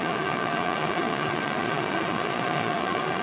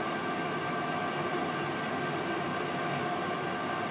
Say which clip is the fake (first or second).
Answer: first